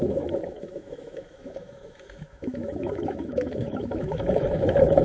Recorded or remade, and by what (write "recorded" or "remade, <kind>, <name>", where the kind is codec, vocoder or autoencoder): remade, autoencoder, DAC-VAE